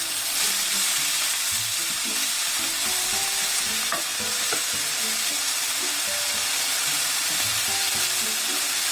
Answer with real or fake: real